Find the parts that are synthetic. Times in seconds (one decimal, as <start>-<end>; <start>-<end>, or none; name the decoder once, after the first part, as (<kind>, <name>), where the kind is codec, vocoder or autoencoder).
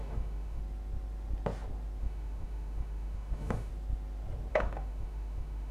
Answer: 0.0-0.6 (autoencoder, DAC-VAE); 2.0-3.7; 4.5-5.7